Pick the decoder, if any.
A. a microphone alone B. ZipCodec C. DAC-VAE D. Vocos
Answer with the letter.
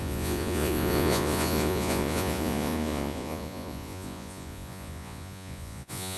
D